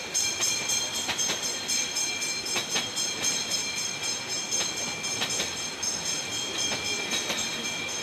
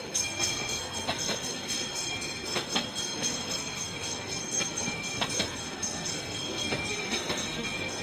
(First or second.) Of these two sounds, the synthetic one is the second